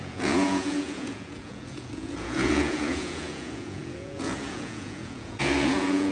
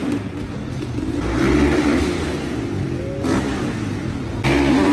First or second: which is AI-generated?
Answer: first